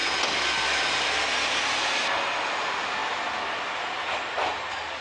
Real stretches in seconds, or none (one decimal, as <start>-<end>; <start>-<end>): 0.0-5.0